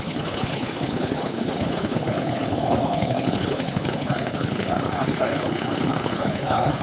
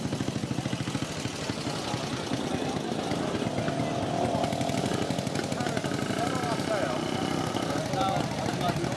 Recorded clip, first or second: second